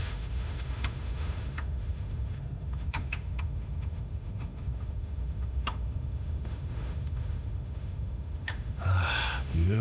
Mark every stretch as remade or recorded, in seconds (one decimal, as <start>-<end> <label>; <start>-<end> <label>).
0.0-9.8 remade